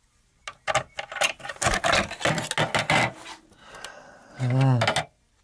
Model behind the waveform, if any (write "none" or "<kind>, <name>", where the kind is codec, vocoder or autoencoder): none